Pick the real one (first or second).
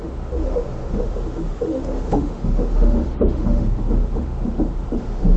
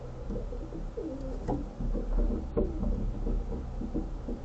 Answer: second